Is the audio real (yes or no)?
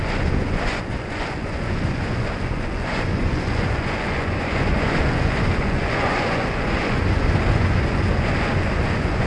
no